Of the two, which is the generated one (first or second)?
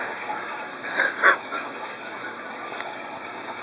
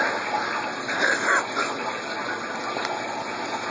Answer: first